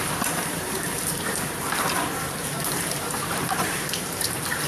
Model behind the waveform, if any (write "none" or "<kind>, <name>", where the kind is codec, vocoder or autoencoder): vocoder, BigVGAN v2